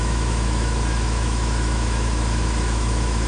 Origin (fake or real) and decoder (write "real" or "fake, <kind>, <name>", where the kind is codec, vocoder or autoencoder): fake, autoencoder, DAC-VAE